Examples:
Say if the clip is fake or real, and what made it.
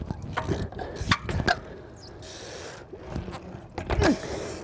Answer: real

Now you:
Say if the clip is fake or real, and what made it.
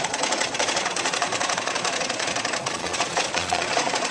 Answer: fake, vocoder, Vocos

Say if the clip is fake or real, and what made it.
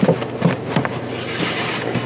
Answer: real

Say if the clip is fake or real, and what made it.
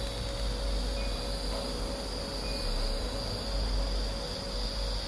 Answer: real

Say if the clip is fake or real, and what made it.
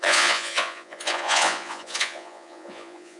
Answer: fake, vocoder, Vocos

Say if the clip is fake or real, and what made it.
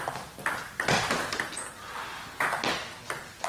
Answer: real